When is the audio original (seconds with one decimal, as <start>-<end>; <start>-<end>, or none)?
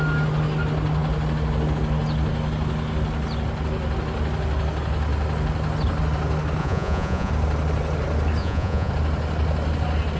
0.0-6.6; 7.3-8.4; 8.9-10.2